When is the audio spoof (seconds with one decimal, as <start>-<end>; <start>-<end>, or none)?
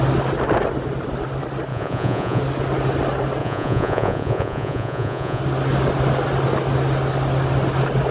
1.7-2.4; 3.4-5.4